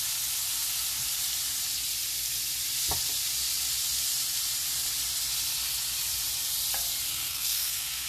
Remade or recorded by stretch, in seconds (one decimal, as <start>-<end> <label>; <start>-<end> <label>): 0.0-7.1 recorded; 7.1-8.1 remade